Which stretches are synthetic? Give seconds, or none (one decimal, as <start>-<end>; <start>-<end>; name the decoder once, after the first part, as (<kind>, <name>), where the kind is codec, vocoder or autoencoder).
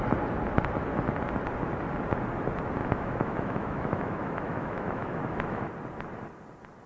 2.8-5.7 (autoencoder, DAC-VAE)